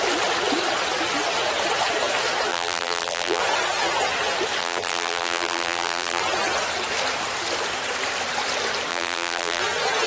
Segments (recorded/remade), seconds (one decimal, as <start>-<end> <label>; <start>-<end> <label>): 0.0-2.5 recorded; 2.5-3.4 remade; 3.4-4.6 recorded; 4.6-6.2 remade; 6.2-8.9 recorded; 8.9-9.6 remade; 9.6-10.1 recorded